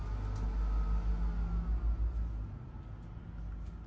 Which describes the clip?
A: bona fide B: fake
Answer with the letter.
A